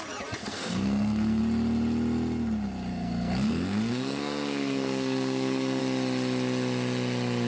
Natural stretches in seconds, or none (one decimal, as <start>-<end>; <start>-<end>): 0.0-0.4; 1.4-2.9; 5.8-7.5